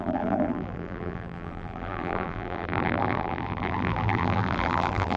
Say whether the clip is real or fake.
fake